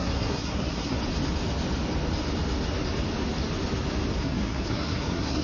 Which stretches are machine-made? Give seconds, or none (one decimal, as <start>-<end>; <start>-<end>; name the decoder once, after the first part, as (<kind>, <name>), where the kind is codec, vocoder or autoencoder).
0.0-1.0 (codec, SNAC); 4.2-5.4